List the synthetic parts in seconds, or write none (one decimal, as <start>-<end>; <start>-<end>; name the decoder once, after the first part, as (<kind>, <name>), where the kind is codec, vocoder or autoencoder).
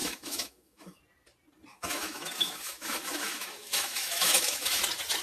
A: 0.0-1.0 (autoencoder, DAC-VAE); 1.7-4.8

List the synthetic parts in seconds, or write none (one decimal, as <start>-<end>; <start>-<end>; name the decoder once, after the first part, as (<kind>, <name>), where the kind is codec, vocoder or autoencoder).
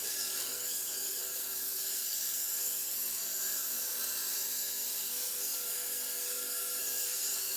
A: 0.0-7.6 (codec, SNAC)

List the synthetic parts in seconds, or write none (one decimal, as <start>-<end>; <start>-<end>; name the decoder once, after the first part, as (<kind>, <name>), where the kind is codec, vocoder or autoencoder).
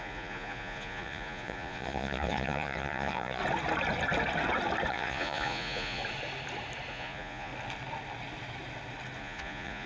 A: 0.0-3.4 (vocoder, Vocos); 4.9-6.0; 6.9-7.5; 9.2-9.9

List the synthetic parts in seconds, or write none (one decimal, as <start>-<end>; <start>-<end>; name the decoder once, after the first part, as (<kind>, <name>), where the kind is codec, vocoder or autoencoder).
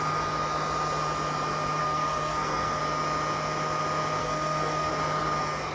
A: 1.8-2.8 (codec, SNAC); 4.2-4.9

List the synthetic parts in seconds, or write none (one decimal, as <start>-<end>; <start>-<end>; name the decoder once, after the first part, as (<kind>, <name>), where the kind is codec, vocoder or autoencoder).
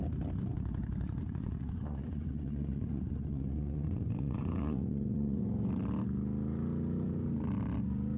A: 0.5-5.4 (vocoder, Vocos)